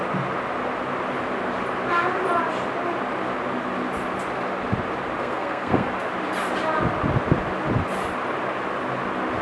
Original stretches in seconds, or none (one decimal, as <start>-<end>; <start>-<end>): 0.0-5.2; 5.9-9.4